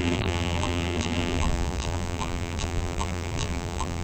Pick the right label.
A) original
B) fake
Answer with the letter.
B